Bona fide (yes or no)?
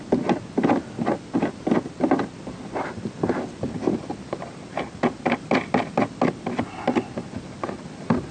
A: yes